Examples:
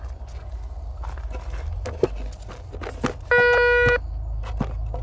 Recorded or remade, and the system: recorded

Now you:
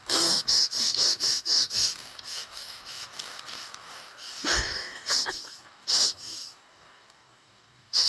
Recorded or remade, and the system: remade, codec, DAC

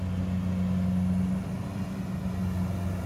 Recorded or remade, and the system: recorded